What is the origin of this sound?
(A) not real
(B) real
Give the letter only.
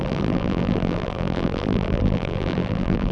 A